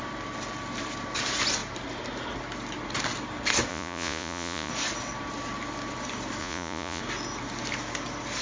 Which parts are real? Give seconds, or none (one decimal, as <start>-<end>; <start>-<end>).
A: 0.0-3.7; 4.7-6.4; 7.0-8.4